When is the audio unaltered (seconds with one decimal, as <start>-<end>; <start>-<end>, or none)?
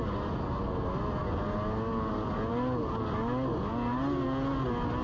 0.0-5.0